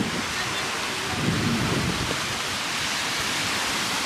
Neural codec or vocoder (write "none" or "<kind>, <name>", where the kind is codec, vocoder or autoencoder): none